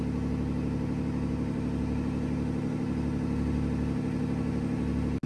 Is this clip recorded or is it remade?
recorded